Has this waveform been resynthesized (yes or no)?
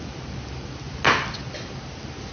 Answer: no